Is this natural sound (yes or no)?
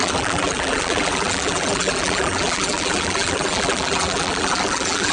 no